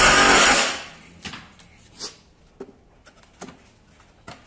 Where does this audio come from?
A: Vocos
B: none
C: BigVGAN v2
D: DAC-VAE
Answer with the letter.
B